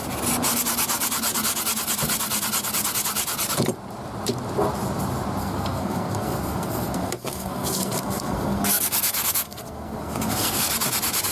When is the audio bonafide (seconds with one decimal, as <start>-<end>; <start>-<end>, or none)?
0.0-5.4; 10.7-11.3